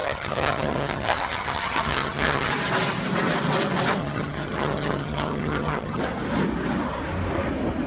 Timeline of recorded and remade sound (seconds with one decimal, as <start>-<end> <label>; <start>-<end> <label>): 0.0-2.5 remade; 2.5-4.0 recorded; 4.0-6.0 remade; 6.0-7.9 recorded